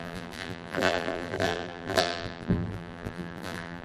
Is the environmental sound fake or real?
fake